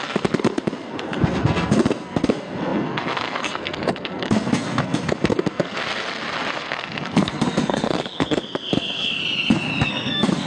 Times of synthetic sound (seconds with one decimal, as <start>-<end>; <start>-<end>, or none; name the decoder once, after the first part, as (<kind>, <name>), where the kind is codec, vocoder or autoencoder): 0.0-5.8 (codec, SNAC); 6.5-9.2; 9.9-10.5